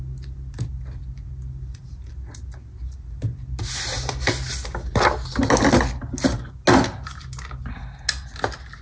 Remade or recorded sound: recorded